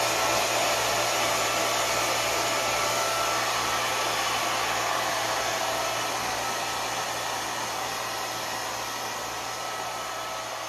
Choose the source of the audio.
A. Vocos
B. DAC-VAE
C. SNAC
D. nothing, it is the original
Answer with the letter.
D